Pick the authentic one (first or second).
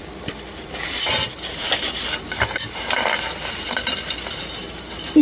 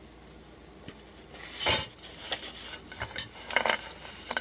second